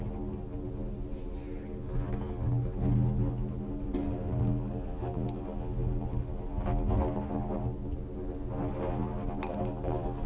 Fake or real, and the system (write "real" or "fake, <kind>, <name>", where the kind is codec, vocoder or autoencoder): real